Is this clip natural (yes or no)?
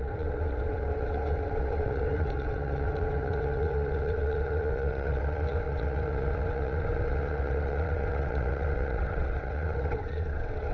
no